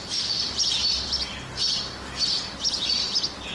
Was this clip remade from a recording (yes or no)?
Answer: no